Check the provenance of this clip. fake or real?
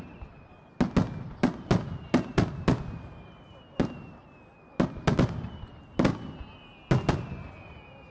real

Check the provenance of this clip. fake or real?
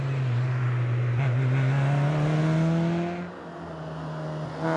real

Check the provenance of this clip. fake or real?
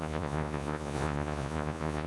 fake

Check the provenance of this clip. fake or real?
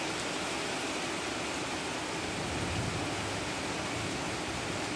real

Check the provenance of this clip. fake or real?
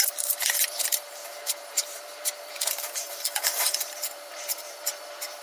fake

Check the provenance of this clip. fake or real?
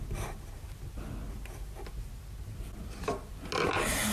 real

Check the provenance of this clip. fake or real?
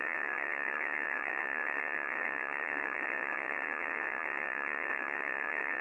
fake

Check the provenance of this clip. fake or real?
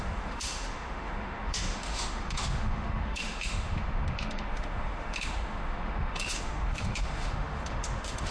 fake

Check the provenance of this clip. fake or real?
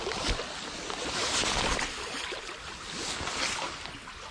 real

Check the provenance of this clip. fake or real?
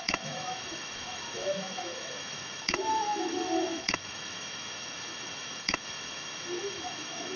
fake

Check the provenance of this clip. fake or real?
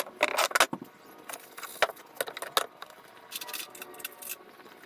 real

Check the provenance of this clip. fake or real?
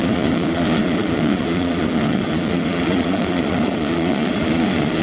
fake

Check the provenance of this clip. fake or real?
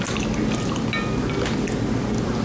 real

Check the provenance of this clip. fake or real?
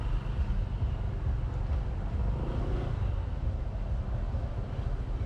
real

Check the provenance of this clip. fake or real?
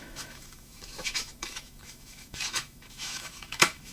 fake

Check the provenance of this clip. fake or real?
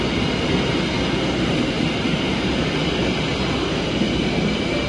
real